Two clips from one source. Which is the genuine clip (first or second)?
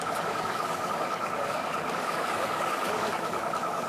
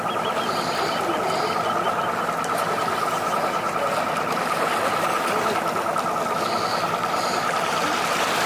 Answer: second